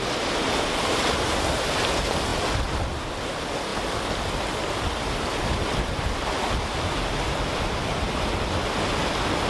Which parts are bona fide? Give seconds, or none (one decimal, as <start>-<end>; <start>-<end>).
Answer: 0.0-9.5